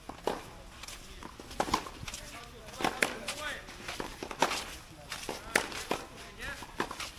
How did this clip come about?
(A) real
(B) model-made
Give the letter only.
A